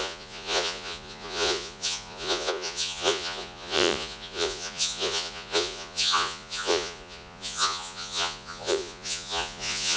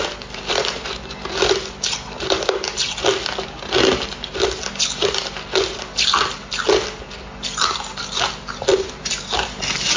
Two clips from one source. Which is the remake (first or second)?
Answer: first